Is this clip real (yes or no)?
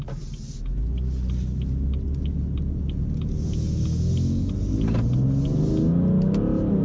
yes